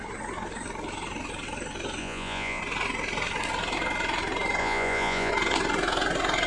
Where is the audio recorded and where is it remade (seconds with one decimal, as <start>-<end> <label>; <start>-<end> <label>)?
0.0-2.0 recorded; 2.0-2.6 remade; 2.6-4.6 recorded; 4.6-5.3 remade; 5.3-6.5 recorded